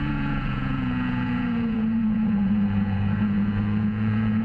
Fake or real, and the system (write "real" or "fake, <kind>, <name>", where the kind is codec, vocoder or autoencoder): fake, vocoder, Vocos